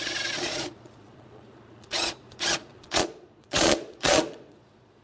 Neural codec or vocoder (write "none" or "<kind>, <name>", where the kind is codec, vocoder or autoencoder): vocoder, Vocos